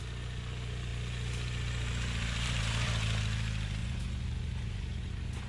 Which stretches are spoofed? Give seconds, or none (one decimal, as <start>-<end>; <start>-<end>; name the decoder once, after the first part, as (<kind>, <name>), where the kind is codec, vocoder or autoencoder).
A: 3.8-5.5 (vocoder, Vocos)